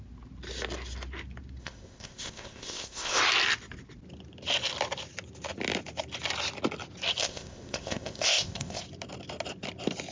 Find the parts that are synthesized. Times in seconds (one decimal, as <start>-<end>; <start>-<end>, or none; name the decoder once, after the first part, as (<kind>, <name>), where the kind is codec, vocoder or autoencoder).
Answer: 1.6-3.2 (codec, ZipCodec); 7.2-8.8